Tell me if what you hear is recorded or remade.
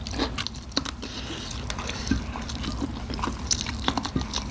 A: recorded